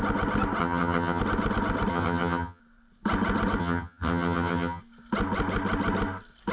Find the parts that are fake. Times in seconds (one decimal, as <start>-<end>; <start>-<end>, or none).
0.6-1.2; 1.9-2.6; 3.6-4.8